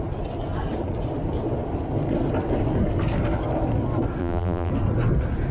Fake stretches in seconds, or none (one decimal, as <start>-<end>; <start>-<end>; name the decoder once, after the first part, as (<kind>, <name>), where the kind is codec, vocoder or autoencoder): 4.2-4.7 (vocoder, BigVGAN v2)